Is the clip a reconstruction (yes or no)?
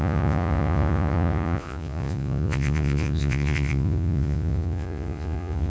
yes